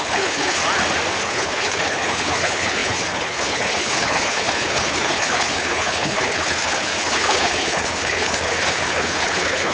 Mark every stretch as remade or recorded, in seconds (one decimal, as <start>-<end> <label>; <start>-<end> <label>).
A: 0.0-0.6 remade; 0.6-1.2 recorded; 1.2-9.7 remade